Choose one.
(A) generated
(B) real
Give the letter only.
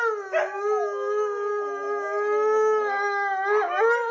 B